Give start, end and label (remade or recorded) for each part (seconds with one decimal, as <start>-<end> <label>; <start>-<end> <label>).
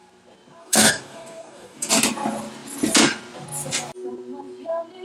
0.0-0.6 recorded; 0.6-1.9 remade; 1.9-5.0 recorded